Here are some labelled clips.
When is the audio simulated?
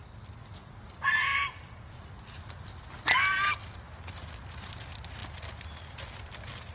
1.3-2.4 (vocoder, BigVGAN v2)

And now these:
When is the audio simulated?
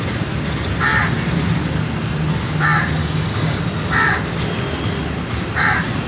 3.0-3.6 (codec, DAC)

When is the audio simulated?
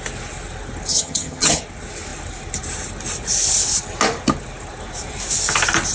0.9-1.6 (vocoder, HiFi-GAN)